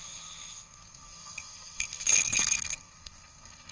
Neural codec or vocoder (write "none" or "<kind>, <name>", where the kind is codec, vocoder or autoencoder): codec, SNAC